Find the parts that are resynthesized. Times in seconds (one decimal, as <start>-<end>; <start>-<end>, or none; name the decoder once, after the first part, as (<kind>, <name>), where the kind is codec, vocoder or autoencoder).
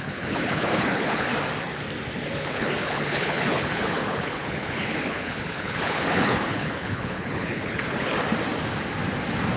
0.0-1.3 (codec, HILCodec); 2.3-8.1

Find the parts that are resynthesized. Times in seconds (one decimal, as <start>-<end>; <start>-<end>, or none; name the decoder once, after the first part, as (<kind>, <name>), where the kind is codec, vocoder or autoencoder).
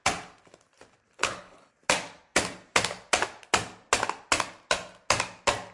1.2-1.7 (codec, HILCodec)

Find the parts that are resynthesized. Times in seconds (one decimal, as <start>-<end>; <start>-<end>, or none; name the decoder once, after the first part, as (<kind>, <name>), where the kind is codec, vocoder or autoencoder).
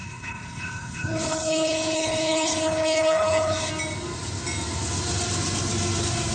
0.0-3.7 (codec, HILCodec)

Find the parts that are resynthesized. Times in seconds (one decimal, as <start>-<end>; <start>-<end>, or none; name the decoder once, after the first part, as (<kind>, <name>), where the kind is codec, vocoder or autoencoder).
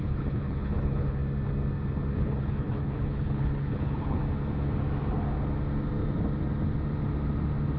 0.0-1.2 (codec, HILCodec); 2.1-4.2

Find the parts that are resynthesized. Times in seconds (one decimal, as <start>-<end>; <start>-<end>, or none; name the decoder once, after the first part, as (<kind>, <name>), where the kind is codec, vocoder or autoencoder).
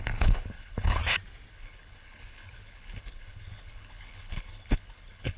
0.0-1.0 (codec, HILCodec); 1.5-5.4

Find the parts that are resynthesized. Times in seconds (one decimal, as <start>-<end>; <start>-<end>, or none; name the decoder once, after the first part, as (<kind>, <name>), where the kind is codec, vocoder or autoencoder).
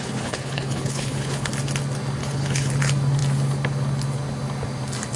0.0-1.5 (codec, HILCodec); 2.2-2.7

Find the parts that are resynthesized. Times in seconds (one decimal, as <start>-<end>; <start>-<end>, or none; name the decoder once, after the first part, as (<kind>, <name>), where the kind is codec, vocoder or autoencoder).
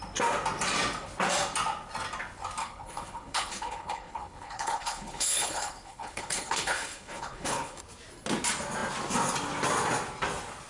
2.6-7.8 (codec, HILCodec)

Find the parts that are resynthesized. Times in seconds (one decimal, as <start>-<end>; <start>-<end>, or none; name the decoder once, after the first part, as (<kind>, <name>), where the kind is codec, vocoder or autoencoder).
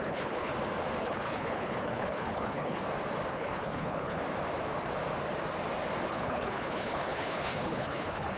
0.0-0.5 (codec, HILCodec); 1.0-2.8; 3.3-4.2; 6.1-8.4